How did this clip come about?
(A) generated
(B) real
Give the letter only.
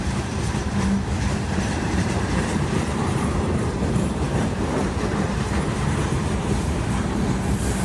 A